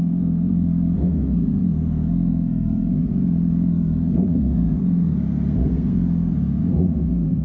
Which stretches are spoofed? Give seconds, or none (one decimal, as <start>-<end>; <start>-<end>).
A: 0.0-3.1; 3.7-7.4